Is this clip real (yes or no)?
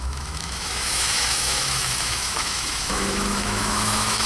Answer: no